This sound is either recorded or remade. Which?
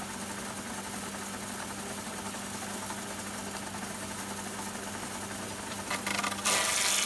recorded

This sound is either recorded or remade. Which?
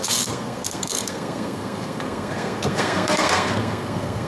remade